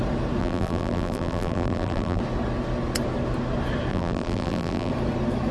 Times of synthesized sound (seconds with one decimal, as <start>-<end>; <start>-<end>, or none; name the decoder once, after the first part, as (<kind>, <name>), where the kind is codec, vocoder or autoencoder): 0.4-2.2 (vocoder, BigVGAN v2); 3.9-4.9